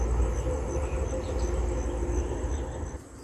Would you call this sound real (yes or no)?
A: yes